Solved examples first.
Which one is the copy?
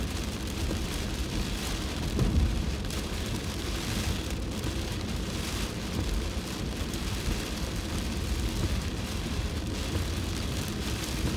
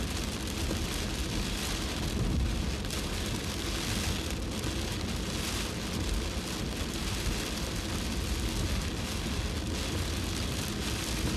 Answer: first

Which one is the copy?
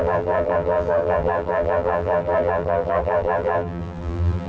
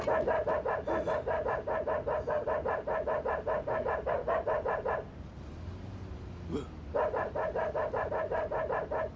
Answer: first